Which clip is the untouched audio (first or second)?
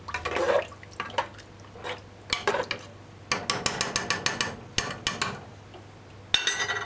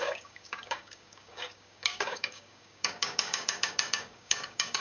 first